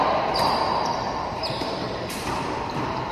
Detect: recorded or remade remade